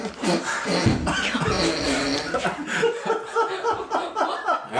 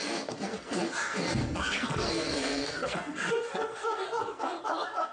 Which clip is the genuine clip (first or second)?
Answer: first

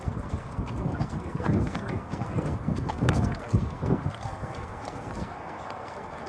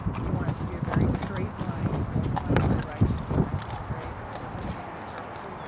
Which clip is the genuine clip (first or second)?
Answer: second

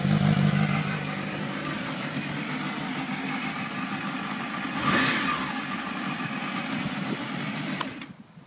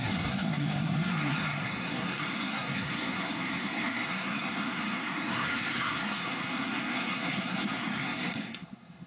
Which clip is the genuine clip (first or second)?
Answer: first